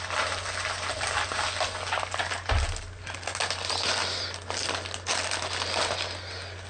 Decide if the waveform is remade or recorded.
recorded